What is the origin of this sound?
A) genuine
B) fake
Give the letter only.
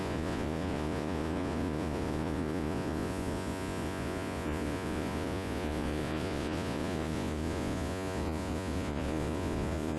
B